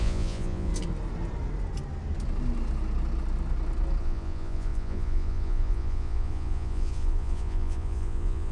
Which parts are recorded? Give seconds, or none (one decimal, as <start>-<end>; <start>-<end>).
0.7-4.0